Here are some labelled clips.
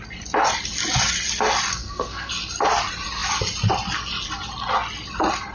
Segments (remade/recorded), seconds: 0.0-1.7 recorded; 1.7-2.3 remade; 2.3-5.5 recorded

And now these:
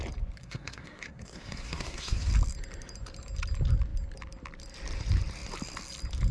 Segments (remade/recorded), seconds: 0.0-0.4 recorded; 0.4-2.3 remade; 2.3-6.3 recorded